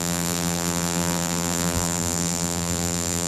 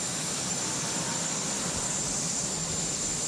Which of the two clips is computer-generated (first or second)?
first